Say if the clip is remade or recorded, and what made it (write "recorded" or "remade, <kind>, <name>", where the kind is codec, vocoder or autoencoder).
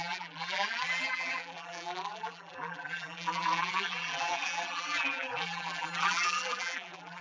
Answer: remade, vocoder, BigVGAN v2